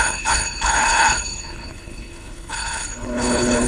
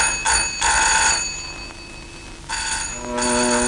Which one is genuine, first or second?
second